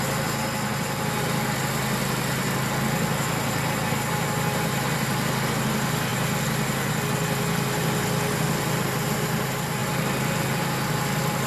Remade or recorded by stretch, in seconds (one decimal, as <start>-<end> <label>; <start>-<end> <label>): 0.0-11.5 recorded